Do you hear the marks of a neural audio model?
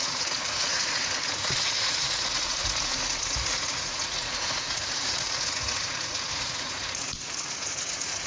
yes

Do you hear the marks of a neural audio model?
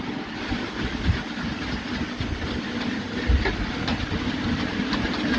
no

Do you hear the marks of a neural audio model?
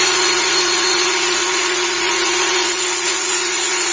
yes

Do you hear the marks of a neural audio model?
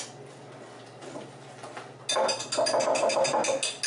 no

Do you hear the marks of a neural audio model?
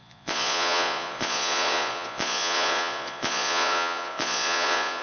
yes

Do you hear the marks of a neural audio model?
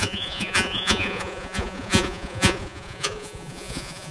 yes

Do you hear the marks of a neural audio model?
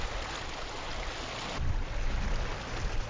no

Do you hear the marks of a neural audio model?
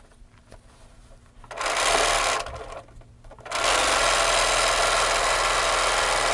no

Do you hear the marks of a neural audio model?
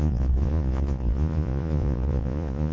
yes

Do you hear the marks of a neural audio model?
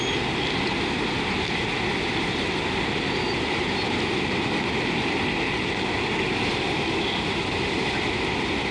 no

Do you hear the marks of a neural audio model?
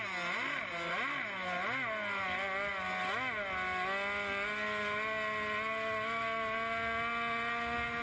no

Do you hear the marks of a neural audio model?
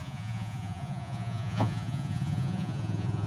yes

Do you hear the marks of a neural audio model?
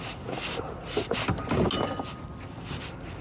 no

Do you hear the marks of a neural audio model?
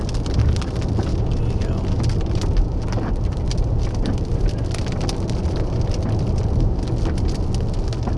no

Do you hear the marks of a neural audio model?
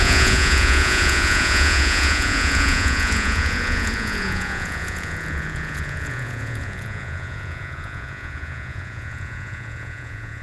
yes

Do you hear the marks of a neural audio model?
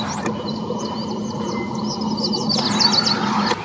no